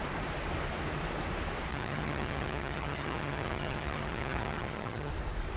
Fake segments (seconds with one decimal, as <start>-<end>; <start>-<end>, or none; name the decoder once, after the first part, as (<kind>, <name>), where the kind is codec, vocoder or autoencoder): 1.7-5.1 (vocoder, HiFi-GAN)